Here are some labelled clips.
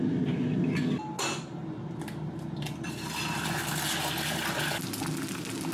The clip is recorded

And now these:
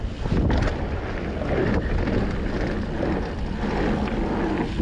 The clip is recorded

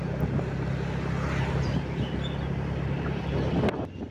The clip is recorded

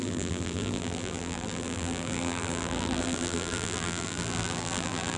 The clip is remade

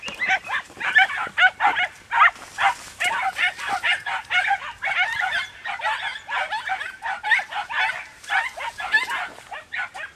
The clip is recorded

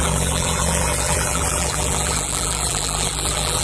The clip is remade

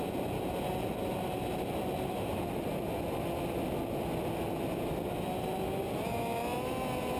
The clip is recorded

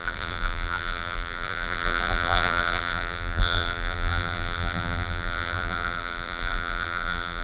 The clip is remade